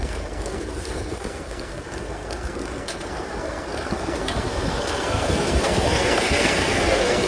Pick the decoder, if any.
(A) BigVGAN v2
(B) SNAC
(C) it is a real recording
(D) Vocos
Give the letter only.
B